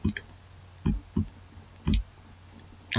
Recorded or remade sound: recorded